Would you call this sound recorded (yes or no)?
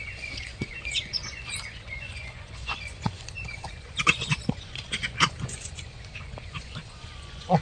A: no